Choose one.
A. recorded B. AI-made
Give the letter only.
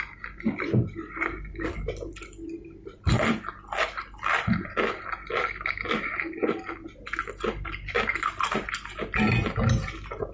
A